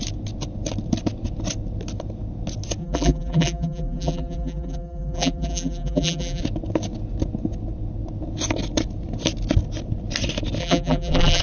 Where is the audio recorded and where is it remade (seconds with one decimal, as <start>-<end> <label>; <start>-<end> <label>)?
0.0-2.8 recorded; 2.8-6.4 remade; 6.4-10.6 recorded; 10.6-11.4 remade